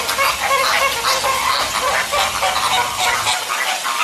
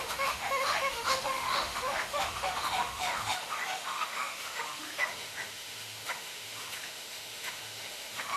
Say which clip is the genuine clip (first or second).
first